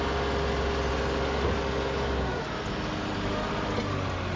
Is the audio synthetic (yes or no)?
no